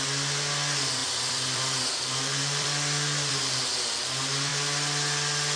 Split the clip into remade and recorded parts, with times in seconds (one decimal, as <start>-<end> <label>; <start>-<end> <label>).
0.0-1.0 recorded; 1.0-3.3 remade; 3.3-5.6 recorded